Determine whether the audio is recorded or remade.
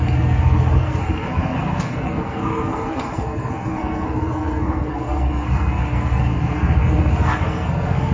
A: remade